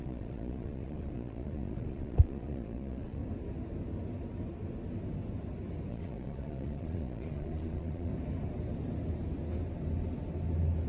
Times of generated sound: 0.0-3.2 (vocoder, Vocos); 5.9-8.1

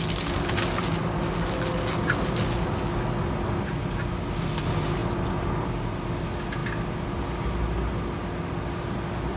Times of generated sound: none

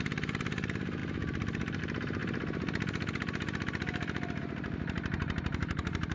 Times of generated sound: 0.0-6.1 (vocoder, BigVGAN v2)

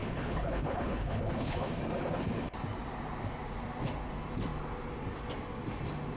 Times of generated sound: 0.0-1.7 (codec, HILCodec)